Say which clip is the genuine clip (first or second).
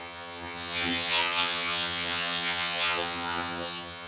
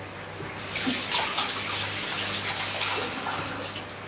second